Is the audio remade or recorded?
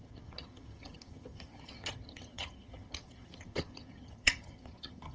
remade